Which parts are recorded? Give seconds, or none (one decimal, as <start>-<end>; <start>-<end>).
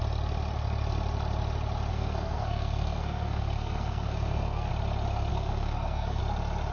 0.0-1.9; 4.7-5.3; 6.2-6.7